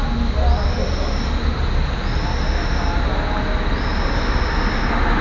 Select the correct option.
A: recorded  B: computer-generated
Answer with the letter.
A